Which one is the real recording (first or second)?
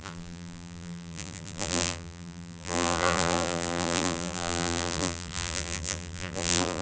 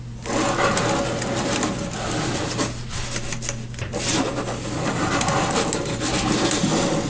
second